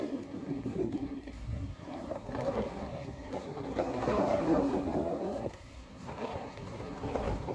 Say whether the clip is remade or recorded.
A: remade